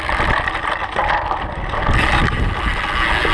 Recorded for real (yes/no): yes